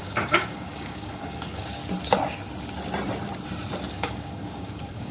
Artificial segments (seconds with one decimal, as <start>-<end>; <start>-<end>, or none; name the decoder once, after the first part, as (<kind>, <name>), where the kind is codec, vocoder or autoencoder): 0.0-1.8 (codec, DAC); 3.9-5.1